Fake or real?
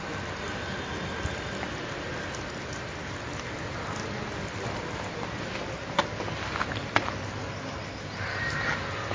real